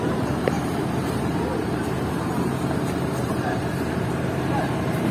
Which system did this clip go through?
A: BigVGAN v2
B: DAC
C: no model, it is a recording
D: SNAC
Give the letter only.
A